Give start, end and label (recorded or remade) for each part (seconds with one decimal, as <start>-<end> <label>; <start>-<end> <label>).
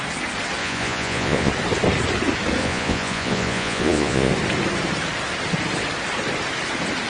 0.0-0.6 recorded; 0.6-1.5 remade; 1.5-2.6 recorded; 2.6-4.3 remade; 4.3-7.1 recorded